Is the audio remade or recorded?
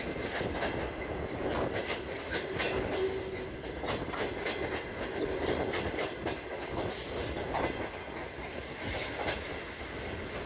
recorded